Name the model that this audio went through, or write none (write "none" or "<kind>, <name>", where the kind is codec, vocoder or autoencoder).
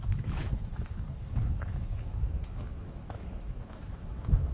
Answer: autoencoder, DAC-VAE